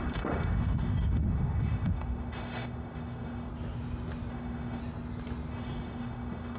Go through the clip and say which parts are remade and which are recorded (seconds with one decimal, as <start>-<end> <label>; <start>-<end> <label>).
0.0-3.5 remade; 3.5-4.3 recorded; 4.3-4.8 remade; 4.8-5.5 recorded; 5.5-6.6 remade